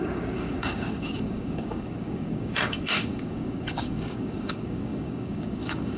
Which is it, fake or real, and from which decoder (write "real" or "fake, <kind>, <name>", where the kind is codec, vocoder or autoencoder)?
fake, codec, DAC